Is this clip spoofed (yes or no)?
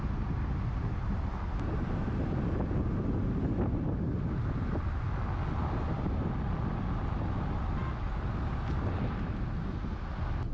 no